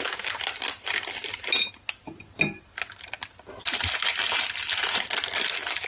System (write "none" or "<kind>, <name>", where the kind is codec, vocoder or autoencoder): none